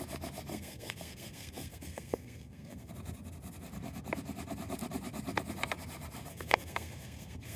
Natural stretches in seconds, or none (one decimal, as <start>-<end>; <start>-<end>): 0.0-0.5; 2.9-6.3